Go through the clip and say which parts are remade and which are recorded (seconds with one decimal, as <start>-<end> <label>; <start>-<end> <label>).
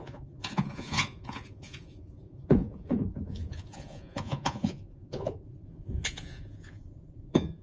0.0-7.6 remade